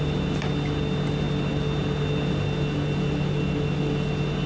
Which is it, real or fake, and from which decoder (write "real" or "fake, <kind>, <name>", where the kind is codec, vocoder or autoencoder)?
real